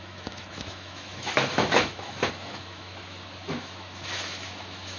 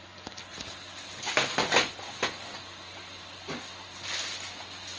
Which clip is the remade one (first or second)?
first